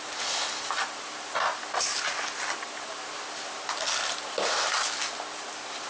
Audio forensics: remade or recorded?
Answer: recorded